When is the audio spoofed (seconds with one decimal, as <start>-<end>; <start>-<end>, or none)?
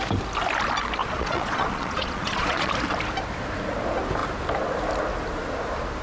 1.0-2.7